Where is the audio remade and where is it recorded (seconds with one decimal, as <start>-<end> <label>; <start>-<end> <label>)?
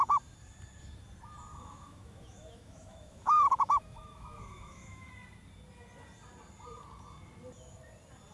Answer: 0.0-1.5 recorded; 1.5-5.1 remade; 5.1-8.3 recorded